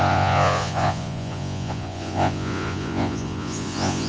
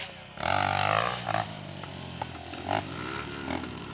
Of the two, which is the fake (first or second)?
first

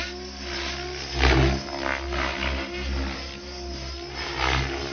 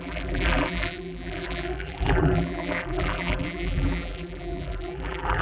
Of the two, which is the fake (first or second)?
second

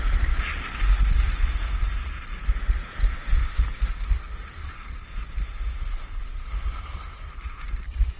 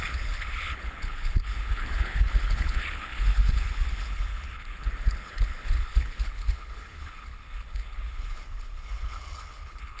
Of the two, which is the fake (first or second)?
second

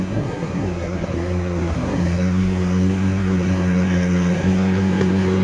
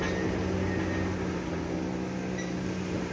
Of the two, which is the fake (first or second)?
first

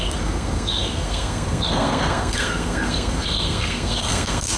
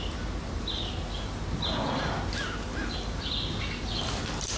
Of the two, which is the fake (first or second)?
first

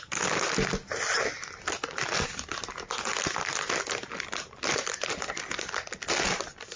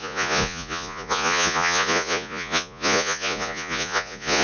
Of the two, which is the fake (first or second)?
second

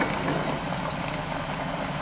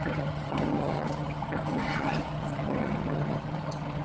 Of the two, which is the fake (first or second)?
second